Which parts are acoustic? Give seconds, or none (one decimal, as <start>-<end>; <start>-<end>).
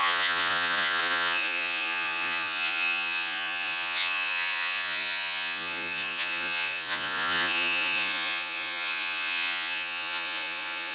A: none